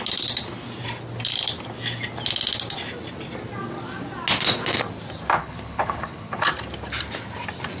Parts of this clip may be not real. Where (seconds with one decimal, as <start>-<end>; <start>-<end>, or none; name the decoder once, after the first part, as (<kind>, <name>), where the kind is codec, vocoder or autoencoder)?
5.4-6.4 (codec, HILCodec)